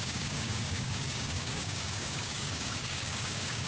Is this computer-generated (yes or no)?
yes